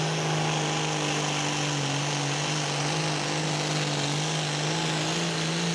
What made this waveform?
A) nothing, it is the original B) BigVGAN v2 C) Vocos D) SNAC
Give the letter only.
A